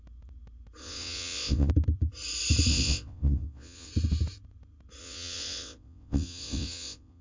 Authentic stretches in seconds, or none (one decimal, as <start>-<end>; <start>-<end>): 0.0-0.8; 1.7-2.7; 3.9-5.0